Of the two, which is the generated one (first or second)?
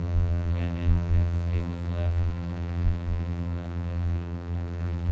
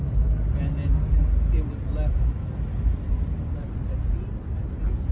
first